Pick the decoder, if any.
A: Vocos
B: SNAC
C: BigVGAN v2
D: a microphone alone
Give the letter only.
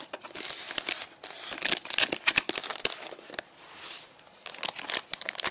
D